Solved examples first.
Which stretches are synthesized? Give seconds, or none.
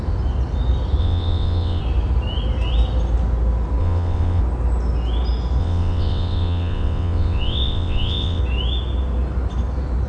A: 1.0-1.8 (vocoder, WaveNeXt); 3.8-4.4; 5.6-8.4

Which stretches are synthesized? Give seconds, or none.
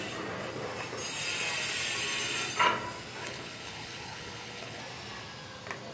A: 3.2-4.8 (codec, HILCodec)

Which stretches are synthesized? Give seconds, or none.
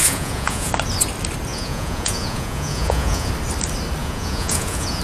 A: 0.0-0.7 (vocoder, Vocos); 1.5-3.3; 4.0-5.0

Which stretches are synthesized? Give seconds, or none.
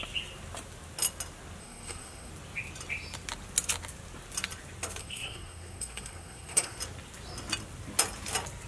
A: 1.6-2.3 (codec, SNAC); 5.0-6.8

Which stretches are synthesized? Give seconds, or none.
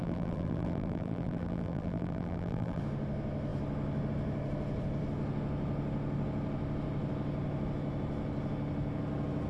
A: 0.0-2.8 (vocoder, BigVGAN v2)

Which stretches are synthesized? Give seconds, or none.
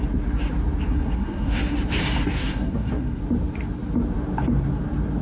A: 0.9-1.8 (codec, SNAC); 2.2-3.2